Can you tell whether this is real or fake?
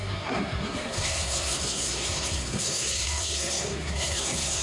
fake